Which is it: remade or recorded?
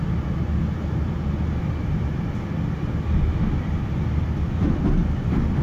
recorded